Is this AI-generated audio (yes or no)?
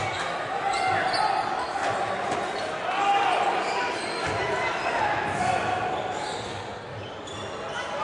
no